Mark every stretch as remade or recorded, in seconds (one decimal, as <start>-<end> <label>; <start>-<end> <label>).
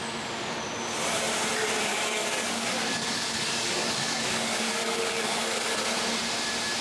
0.0-1.9 recorded; 1.9-6.0 remade; 6.0-6.8 recorded